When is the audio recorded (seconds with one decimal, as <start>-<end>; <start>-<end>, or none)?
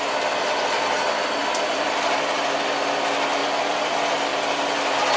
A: 0.0-1.4; 2.3-3.4; 3.9-5.2